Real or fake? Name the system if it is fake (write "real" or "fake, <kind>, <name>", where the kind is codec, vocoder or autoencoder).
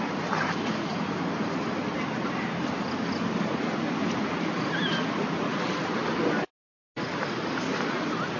real